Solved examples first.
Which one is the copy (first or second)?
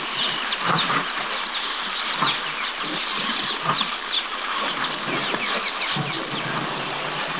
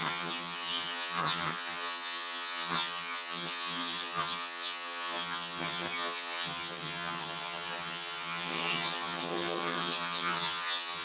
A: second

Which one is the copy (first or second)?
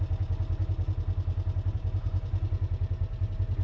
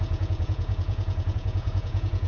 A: second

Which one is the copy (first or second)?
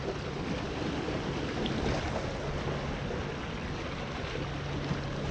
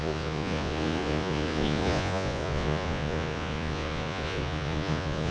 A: second